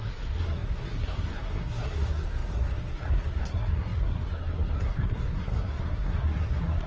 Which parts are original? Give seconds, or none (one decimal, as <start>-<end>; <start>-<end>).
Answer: none